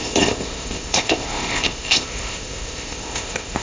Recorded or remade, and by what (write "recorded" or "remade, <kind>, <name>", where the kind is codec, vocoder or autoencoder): remade, codec, ZipCodec